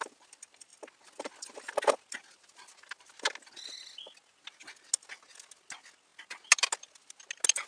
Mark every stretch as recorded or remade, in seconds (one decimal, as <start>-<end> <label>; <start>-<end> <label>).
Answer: 0.0-7.7 recorded

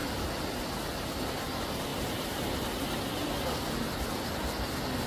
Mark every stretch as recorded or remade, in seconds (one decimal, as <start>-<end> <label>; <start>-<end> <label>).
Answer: 0.0-0.6 remade; 0.6-5.1 recorded

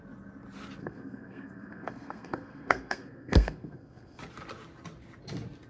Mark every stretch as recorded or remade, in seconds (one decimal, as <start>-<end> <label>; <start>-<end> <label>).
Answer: 0.0-0.8 recorded; 0.8-4.2 remade; 4.2-5.7 recorded

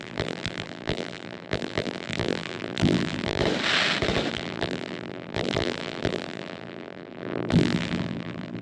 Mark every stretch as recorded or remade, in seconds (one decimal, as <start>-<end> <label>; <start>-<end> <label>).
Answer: 0.0-3.4 remade; 3.4-4.3 recorded; 4.3-8.6 remade

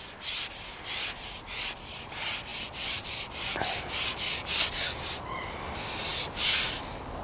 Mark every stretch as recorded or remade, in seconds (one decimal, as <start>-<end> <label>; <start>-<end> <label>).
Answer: 0.0-7.2 recorded

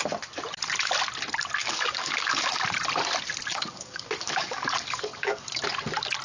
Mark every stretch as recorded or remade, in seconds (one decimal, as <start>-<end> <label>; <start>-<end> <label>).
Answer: 0.0-1.6 recorded; 1.6-2.6 remade; 2.6-3.5 recorded; 3.5-5.4 remade; 5.4-6.2 recorded